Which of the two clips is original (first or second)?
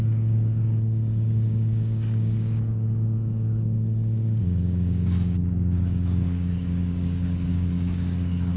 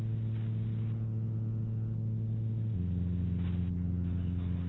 second